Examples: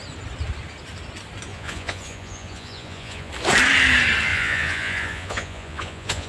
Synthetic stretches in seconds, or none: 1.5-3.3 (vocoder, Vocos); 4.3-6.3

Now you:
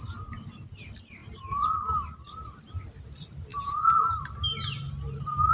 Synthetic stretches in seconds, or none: 3.5-4.2 (vocoder, Vocos)

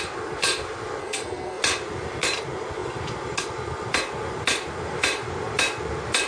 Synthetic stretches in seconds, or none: 1.0-1.6 (codec, SNAC)

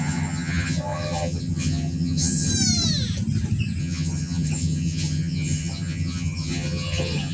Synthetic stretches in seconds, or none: 0.0-2.5 (vocoder, HiFi-GAN); 3.8-7.3

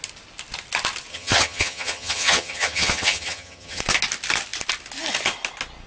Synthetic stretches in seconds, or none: 1.1-3.8 (vocoder, HiFi-GAN)

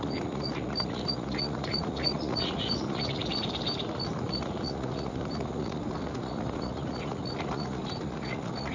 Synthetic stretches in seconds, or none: 0.0-3.4 (vocoder, Vocos); 3.9-8.7